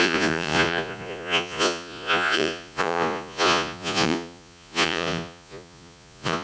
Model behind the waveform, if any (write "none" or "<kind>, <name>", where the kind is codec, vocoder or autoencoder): vocoder, Vocos